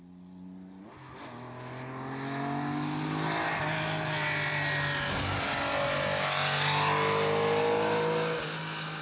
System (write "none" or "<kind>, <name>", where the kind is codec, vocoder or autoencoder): none